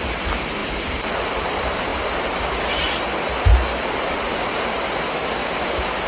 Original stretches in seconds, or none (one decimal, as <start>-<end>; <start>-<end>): 1.9-5.6